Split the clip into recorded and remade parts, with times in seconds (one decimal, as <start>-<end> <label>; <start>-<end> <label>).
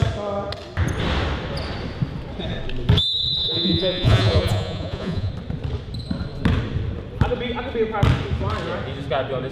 0.0-3.4 recorded; 3.4-5.3 remade; 5.3-9.5 recorded